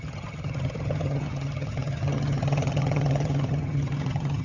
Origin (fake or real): fake